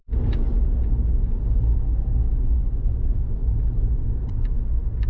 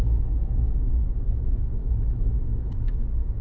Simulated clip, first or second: second